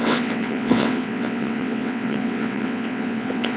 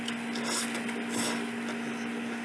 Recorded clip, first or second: second